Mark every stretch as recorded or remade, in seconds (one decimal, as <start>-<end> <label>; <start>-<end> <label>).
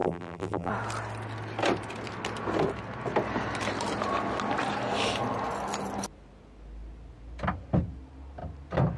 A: 0.0-0.7 remade; 0.7-9.0 recorded